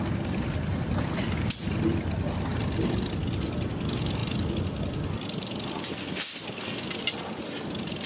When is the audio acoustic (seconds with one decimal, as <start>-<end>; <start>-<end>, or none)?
0.0-4.2; 6.8-8.1